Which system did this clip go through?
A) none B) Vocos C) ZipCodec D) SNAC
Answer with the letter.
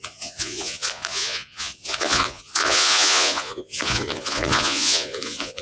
B